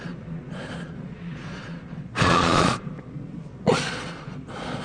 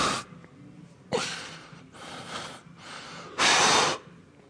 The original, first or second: second